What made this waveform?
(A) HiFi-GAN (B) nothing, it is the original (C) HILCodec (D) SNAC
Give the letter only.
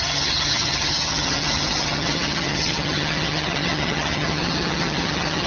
A